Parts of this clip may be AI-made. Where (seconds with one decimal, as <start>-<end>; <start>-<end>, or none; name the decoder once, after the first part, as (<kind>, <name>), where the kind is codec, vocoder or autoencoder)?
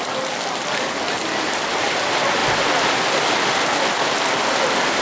none